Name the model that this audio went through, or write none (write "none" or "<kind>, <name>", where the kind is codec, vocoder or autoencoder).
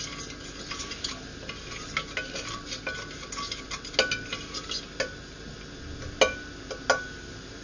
none